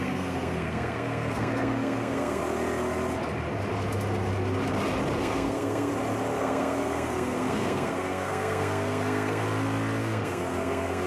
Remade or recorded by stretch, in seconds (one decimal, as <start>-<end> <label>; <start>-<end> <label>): 0.0-2.4 remade; 2.4-5.2 recorded; 5.2-5.9 remade; 5.9-6.4 recorded; 6.4-9.4 remade; 9.4-10.0 recorded; 10.0-11.1 remade